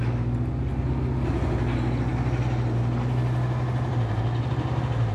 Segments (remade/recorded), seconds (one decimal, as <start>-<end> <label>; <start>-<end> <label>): 0.0-5.1 recorded